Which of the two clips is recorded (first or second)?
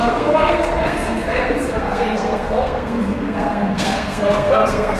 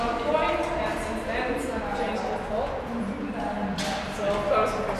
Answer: second